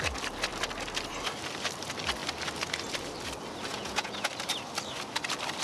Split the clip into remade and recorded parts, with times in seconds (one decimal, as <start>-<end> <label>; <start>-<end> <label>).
0.0-3.7 recorded; 3.7-4.3 remade; 4.3-5.6 recorded

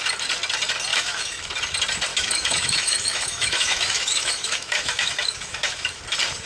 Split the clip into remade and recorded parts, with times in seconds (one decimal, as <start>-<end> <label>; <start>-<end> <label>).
0.0-0.9 recorded; 0.9-1.5 remade; 1.5-2.1 recorded; 2.1-6.0 remade; 6.0-6.5 recorded

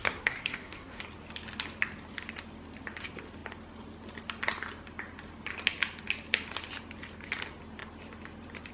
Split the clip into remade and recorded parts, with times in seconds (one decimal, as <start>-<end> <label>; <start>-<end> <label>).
0.0-1.0 remade; 1.0-8.7 recorded

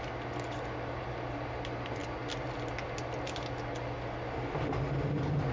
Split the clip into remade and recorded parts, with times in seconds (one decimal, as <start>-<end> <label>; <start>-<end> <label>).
0.0-5.5 recorded

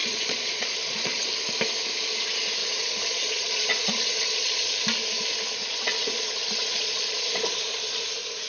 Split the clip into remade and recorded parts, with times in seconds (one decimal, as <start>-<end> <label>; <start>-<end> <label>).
0.0-1.3 remade; 1.3-2.6 recorded; 2.6-4.7 remade; 4.7-5.6 recorded; 5.6-8.0 remade; 8.0-8.5 recorded

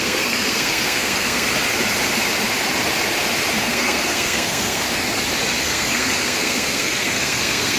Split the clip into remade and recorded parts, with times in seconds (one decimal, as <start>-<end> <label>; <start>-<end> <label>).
0.0-1.5 remade; 1.5-3.6 recorded; 3.6-4.8 remade; 4.8-5.6 recorded; 5.6-7.8 remade

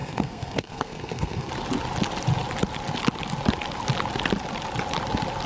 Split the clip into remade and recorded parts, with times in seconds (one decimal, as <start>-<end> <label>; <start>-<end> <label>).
0.0-1.5 remade; 1.5-5.5 recorded

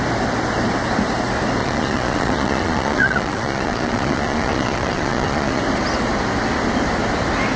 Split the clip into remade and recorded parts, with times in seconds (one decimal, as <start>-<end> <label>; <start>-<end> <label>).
0.0-1.6 recorded; 1.6-5.6 remade; 5.6-7.6 recorded